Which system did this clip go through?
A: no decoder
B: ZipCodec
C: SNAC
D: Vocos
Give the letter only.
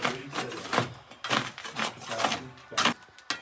A